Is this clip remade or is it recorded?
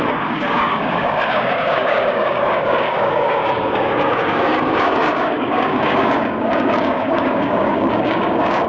remade